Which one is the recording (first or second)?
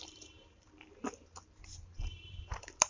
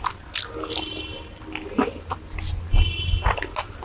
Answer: second